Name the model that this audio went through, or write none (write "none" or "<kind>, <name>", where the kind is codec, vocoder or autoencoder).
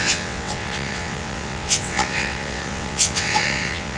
vocoder, WaveNeXt